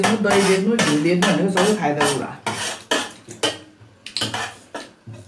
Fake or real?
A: real